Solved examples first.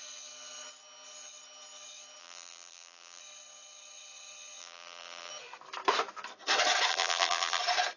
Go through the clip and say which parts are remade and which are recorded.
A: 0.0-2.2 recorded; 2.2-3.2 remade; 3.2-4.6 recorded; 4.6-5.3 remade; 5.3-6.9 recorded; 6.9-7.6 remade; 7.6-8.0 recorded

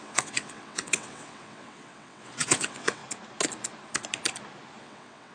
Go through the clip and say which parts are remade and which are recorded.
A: 0.0-3.0 remade; 3.0-4.8 recorded; 4.8-5.3 remade

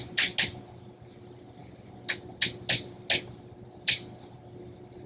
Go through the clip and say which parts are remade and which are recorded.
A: 0.0-5.1 recorded

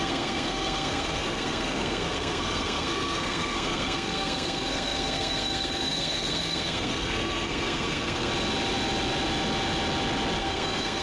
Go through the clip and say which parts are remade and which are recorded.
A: 0.0-8.3 remade; 8.3-10.4 recorded; 10.4-11.0 remade

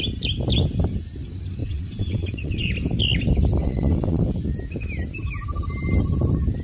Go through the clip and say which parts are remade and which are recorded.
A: 0.0-1.6 recorded; 1.6-2.7 remade; 2.7-3.6 recorded; 3.6-4.2 remade; 4.2-6.6 recorded

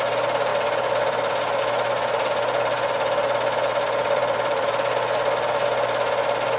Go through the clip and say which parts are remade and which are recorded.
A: 0.0-0.5 recorded; 0.5-1.6 remade; 1.6-4.0 recorded; 4.0-4.7 remade; 4.7-6.6 recorded